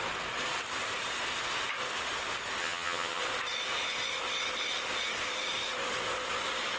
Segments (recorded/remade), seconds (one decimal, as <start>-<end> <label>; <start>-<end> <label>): 0.0-2.6 recorded; 2.6-3.2 remade; 3.2-6.8 recorded